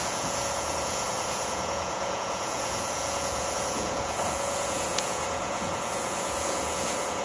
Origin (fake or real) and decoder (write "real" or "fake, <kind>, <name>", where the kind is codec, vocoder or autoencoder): fake, vocoder, Vocos